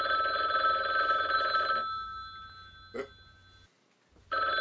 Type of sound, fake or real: real